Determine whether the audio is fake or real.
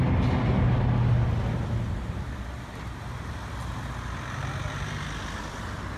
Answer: real